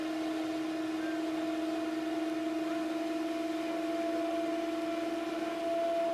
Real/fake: real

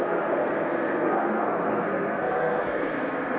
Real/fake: fake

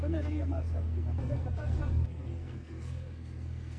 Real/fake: fake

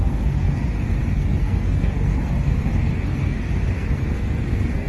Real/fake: fake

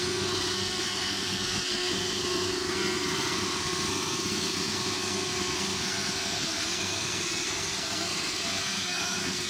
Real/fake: fake